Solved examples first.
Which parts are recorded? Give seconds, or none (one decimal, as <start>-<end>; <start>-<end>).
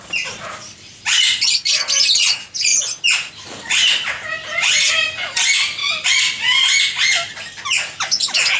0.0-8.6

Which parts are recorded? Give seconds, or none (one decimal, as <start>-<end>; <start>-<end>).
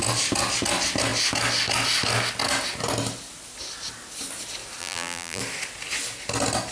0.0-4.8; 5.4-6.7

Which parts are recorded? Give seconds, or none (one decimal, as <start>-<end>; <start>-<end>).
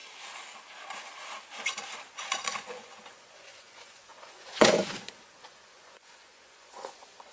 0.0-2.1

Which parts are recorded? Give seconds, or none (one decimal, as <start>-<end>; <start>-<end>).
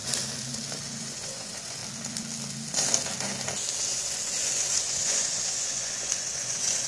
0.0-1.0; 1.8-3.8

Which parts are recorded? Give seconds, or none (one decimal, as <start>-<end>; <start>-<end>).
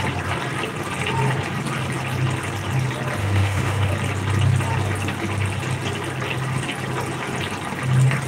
0.0-3.2; 3.9-8.3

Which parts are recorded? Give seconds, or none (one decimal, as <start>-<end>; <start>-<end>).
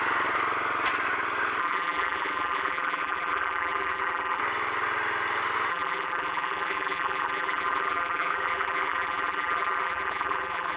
0.0-1.6; 4.4-5.7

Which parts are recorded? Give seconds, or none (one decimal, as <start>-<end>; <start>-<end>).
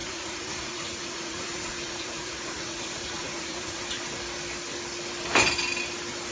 3.8-6.3